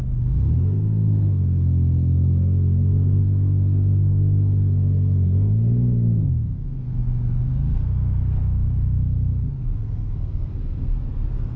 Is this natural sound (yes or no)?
no